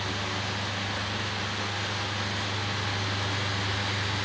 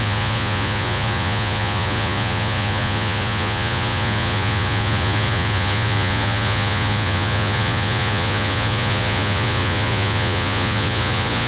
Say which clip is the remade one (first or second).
second